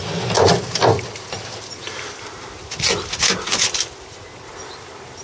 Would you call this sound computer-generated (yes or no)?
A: no